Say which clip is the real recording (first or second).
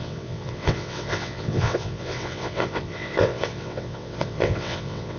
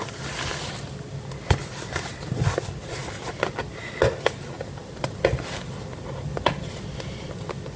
second